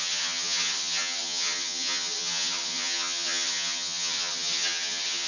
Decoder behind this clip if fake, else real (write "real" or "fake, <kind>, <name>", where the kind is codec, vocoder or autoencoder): fake, vocoder, HiFi-GAN